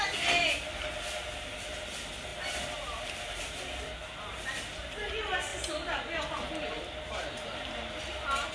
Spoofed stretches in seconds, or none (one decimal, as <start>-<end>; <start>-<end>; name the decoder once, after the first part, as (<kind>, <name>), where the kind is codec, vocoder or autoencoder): none